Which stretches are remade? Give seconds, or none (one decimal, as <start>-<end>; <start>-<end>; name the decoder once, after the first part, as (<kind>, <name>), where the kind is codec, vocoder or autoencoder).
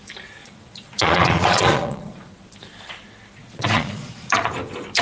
0.4-2.3 (vocoder, Vocos); 3.4-4.5